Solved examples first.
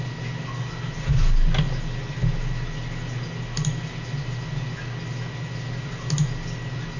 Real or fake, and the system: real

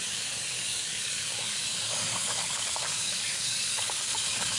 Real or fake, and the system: fake, codec, DAC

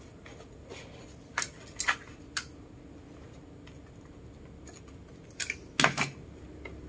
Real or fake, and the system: real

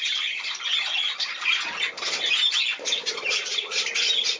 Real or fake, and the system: real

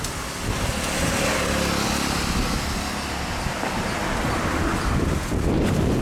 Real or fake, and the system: real